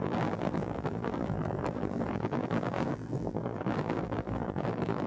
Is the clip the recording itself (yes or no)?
no